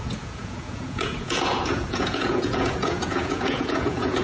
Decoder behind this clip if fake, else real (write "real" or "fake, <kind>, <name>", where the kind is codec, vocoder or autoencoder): fake, vocoder, Vocos